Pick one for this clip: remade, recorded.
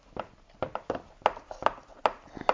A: recorded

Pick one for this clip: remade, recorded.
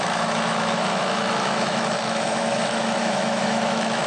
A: remade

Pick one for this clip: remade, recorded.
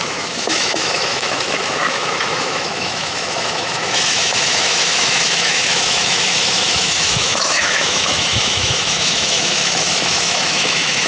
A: remade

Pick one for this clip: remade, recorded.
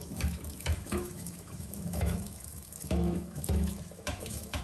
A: remade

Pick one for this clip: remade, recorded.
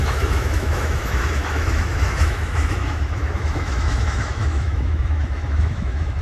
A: remade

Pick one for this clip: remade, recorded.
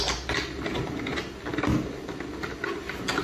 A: recorded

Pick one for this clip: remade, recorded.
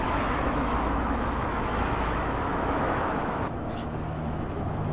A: remade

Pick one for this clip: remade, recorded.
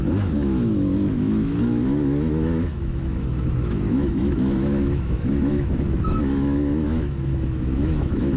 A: remade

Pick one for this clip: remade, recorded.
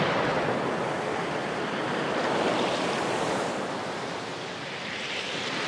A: recorded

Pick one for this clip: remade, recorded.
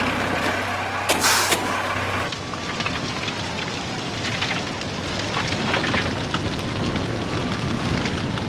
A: recorded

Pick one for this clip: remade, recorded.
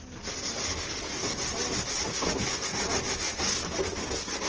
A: recorded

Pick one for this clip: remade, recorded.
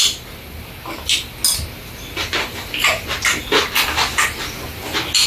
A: recorded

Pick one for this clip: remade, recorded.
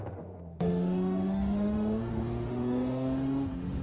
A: remade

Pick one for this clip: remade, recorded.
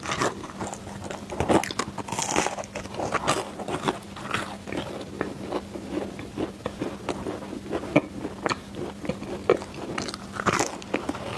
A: recorded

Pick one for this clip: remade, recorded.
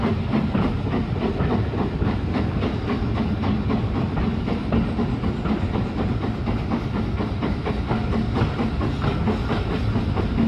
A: recorded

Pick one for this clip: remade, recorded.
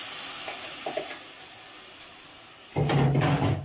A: recorded